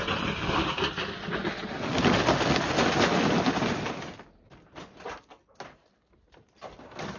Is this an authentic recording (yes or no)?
yes